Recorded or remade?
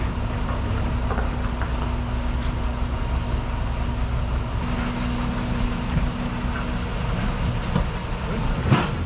recorded